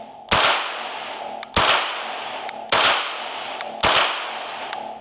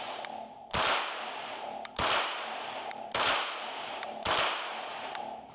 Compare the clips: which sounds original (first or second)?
first